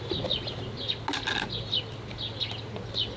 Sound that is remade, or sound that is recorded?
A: recorded